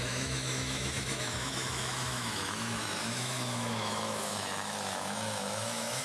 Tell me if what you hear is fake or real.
fake